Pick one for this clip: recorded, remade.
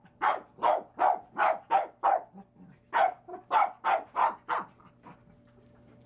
recorded